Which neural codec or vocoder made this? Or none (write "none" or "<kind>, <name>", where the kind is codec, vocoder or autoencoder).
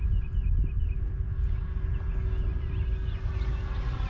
none